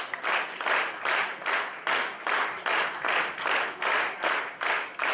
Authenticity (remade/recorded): recorded